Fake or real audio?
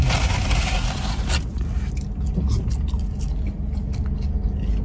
real